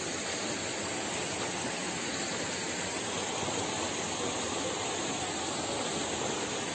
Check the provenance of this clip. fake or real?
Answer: real